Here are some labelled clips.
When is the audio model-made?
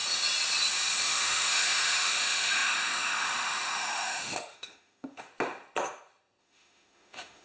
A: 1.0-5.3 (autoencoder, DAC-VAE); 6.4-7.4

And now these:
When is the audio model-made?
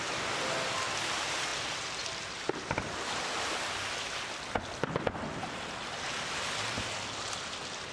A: none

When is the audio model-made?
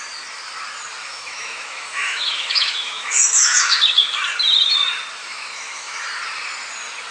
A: 1.0-4.1 (autoencoder, DAC-VAE); 5.2-6.0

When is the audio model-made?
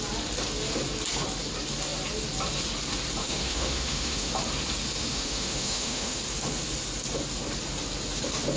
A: 3.2-4.3 (autoencoder, DAC-VAE); 5.1-6.2